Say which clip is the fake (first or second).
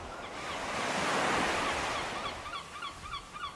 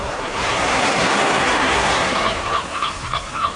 second